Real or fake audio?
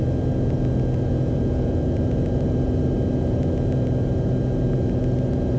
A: real